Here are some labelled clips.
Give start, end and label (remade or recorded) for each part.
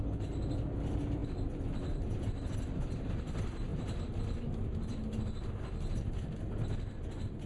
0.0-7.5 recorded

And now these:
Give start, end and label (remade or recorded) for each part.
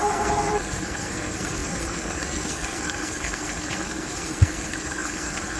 0.0-5.6 remade